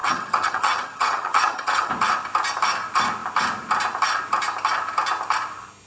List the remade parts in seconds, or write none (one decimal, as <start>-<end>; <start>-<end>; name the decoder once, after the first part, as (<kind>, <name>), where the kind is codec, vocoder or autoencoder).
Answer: 0.0-1.9 (vocoder, HiFi-GAN)